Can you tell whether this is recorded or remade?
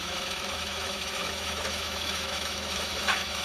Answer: remade